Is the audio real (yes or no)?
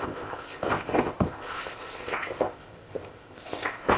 no